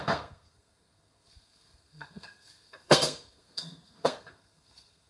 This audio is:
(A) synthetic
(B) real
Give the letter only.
A